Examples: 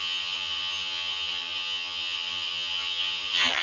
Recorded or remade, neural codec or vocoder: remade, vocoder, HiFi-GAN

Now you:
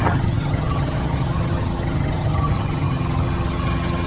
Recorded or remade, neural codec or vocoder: remade, vocoder, HiFi-GAN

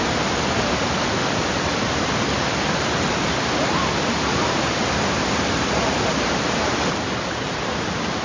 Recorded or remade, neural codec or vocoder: recorded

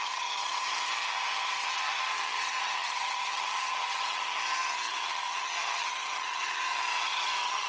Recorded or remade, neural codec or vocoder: remade, vocoder, HiFi-GAN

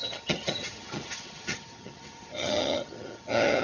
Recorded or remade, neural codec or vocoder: remade, vocoder, HiFi-GAN